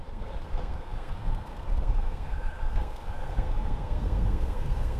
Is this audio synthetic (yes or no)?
yes